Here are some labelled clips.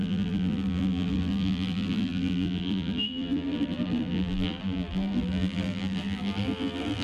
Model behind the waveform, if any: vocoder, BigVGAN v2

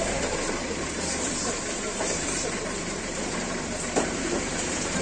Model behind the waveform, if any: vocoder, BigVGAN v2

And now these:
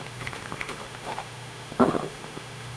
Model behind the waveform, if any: autoencoder, DAC-VAE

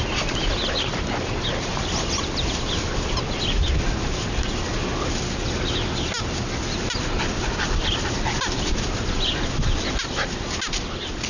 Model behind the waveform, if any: none